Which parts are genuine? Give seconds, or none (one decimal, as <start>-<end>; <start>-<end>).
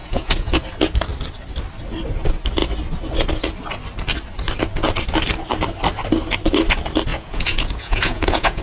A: 0.6-7.1